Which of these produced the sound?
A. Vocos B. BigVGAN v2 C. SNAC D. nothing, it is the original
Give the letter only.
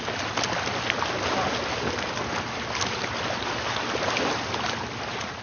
D